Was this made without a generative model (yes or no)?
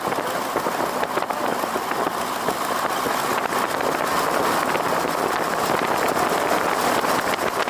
yes